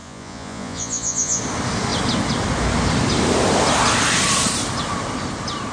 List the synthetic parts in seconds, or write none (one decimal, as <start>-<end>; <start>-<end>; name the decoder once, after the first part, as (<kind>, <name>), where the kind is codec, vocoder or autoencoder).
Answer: 0.0-1.4 (vocoder, Vocos)